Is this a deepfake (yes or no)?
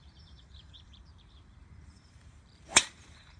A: yes